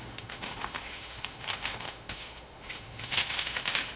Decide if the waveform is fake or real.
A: fake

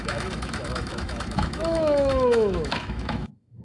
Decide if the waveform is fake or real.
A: fake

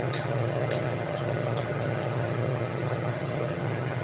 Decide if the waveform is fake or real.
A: fake